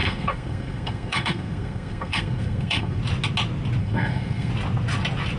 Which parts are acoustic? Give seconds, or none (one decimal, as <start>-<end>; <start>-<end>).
3.0-3.8; 4.5-5.4